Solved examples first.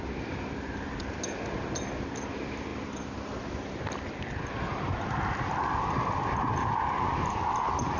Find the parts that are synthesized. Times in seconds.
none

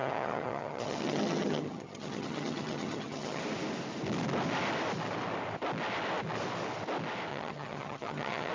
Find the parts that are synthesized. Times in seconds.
0.0-3.4 (vocoder, HiFi-GAN); 7.3-8.5

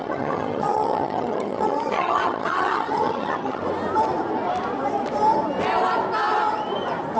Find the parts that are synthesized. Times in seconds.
0.0-3.6 (vocoder, HiFi-GAN)

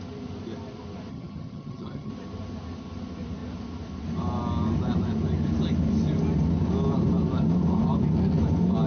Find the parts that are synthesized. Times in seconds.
1.1-2.1 (vocoder, HiFi-GAN)

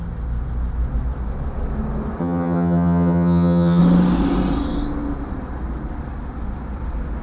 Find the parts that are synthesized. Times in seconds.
2.2-3.8 (vocoder, HiFi-GAN)

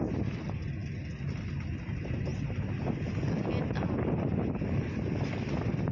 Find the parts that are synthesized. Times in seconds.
none

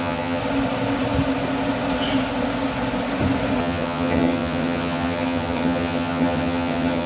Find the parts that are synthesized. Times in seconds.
0.0-0.4 (vocoder, HiFi-GAN); 3.6-7.1

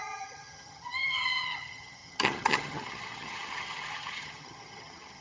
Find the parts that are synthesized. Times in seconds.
0.0-5.2 (vocoder, HiFi-GAN)